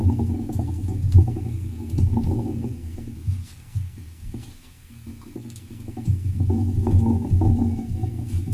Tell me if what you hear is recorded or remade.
remade